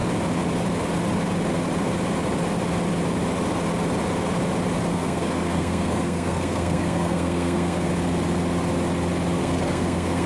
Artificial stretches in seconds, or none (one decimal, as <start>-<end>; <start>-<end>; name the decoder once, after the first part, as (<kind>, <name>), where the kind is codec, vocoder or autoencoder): 4.9-7.9 (codec, SNAC); 9.4-10.3